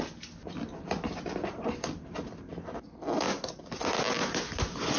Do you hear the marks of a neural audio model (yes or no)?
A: no